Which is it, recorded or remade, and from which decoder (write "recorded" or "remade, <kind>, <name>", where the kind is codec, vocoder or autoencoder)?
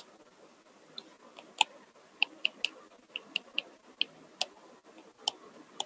recorded